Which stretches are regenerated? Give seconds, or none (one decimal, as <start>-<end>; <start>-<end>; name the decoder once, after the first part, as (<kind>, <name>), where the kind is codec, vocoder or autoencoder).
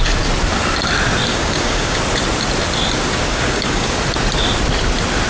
1.3-2.0 (codec, DAC); 3.3-4.0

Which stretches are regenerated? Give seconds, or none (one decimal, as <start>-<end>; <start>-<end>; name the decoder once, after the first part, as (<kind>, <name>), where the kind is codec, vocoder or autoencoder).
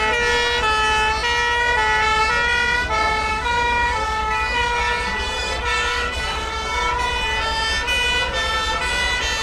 3.3-6.9 (codec, DAC)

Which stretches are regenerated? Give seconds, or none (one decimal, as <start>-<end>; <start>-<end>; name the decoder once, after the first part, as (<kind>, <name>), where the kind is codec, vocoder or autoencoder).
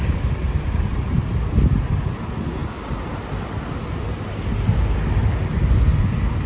none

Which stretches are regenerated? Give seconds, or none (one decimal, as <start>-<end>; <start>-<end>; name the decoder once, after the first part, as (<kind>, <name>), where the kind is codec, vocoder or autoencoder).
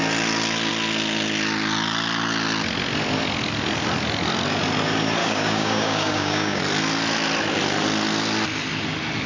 5.2-6.6 (codec, DAC)